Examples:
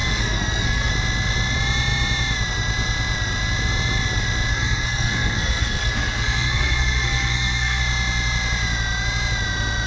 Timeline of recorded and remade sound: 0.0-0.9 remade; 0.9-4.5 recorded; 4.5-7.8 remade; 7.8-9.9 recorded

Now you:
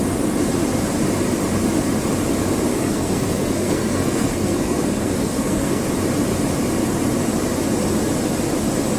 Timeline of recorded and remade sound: 0.0-2.7 recorded; 2.7-5.8 remade; 5.8-9.0 recorded